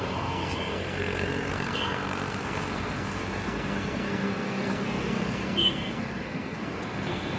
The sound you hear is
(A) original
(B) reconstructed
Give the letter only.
B